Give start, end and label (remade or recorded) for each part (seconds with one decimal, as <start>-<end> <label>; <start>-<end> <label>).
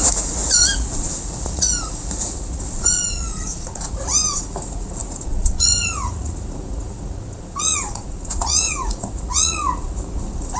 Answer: 0.0-10.6 remade